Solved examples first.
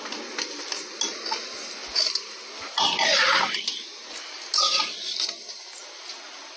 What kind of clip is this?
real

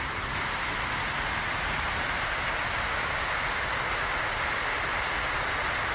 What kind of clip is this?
real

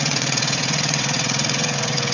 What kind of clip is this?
fake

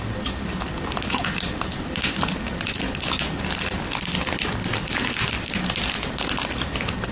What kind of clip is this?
real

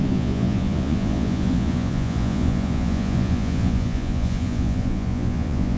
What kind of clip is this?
fake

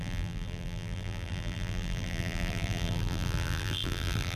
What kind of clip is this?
fake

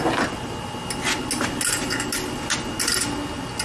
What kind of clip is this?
real